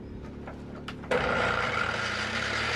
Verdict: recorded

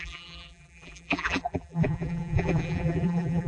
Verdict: remade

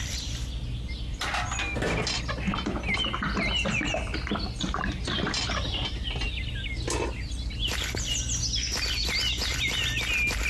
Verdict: recorded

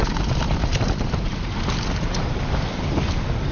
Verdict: recorded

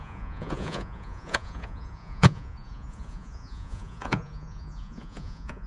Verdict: remade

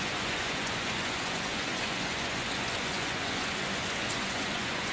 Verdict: remade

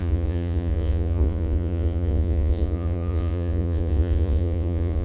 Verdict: remade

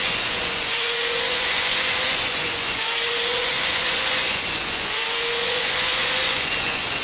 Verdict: remade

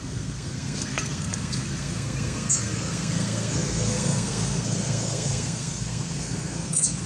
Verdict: remade